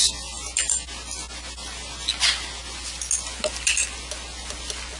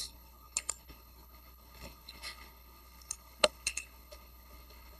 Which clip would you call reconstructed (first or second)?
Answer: second